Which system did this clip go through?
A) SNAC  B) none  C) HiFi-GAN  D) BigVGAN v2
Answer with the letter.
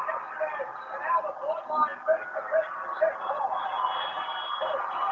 B